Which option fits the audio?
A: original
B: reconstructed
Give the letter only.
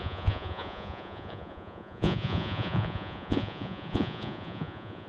B